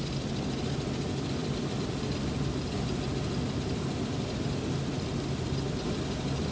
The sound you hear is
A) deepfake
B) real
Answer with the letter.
B